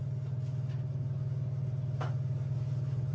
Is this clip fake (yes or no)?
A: no